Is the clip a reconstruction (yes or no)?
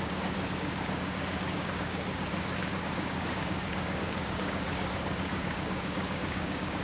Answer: yes